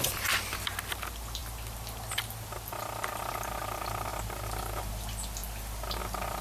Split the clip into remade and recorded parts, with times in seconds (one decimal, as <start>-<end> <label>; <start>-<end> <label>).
0.0-6.4 recorded